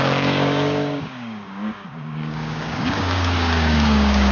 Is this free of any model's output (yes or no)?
no